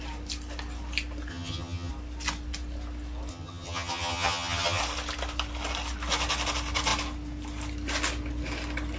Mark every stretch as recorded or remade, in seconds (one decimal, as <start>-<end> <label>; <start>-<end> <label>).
0.0-1.3 recorded; 1.3-1.9 remade; 1.9-3.3 recorded; 3.3-4.8 remade; 4.8-9.0 recorded